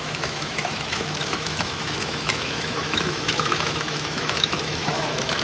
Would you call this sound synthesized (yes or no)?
yes